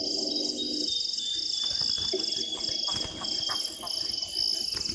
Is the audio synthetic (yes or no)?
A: no